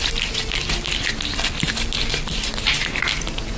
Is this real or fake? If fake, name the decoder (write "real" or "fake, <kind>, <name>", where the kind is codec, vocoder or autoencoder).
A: real